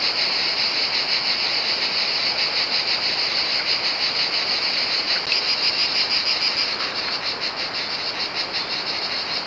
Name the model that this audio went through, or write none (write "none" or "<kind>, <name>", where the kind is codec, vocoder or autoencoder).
none